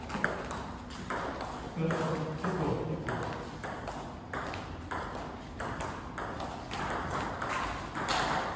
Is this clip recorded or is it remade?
recorded